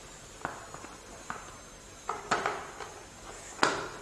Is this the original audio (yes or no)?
yes